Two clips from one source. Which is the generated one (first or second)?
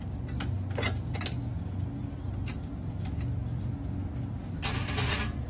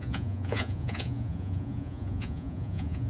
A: second